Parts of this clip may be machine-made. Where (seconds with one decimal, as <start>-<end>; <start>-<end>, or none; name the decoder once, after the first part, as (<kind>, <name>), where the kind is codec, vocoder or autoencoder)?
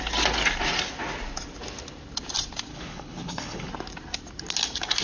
2.7-3.7 (codec, HILCodec)